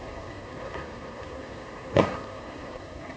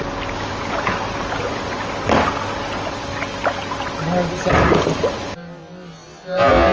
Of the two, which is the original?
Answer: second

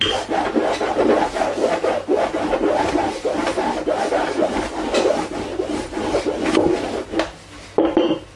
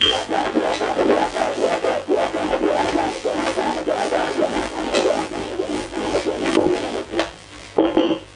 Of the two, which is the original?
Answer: first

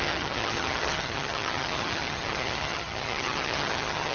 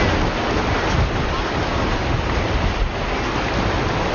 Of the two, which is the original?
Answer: second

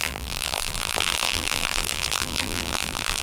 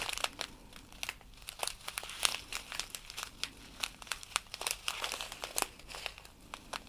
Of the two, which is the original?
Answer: second